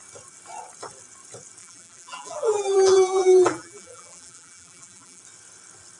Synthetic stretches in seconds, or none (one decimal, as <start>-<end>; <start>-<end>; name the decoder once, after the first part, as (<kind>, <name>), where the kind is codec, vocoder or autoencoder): 1.6-5.2 (vocoder, BigVGAN v2)